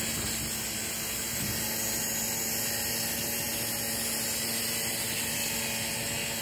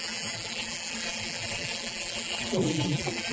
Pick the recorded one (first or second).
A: first